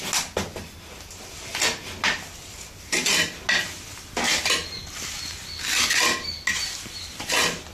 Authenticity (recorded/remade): recorded